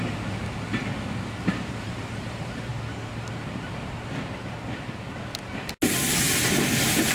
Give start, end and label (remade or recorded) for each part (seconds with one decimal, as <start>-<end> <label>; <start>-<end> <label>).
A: 0.0-0.4 remade; 0.4-1.8 recorded; 1.8-2.7 remade; 2.7-7.1 recorded